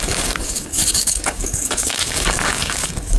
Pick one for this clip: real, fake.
fake